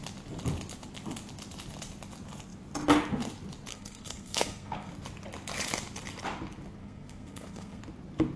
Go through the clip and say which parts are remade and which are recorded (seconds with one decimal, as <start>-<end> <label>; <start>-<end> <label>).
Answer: 0.0-3.7 recorded; 3.7-4.9 remade; 4.9-6.8 recorded; 6.8-7.8 remade; 7.8-8.4 recorded